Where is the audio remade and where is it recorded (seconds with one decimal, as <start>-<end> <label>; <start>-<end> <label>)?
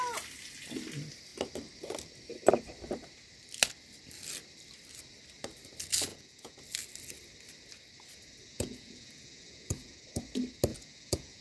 0.0-6.1 recorded; 6.1-6.6 remade; 6.6-8.5 recorded; 8.5-10.0 remade; 10.0-10.7 recorded; 10.7-11.4 remade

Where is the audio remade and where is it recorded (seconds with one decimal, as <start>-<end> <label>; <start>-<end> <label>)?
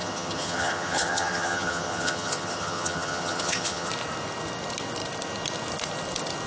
0.0-3.9 remade; 3.9-6.5 recorded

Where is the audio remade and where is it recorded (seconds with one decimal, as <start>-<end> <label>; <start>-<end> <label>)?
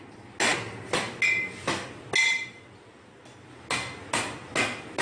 0.0-5.0 recorded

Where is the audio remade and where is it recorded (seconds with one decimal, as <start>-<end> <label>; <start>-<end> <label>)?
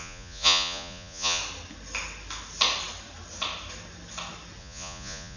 0.0-1.4 remade; 1.4-4.6 recorded; 4.6-5.4 remade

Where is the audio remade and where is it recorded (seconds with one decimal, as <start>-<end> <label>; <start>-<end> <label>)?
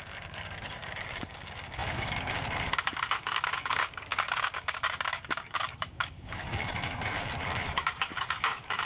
0.0-8.9 remade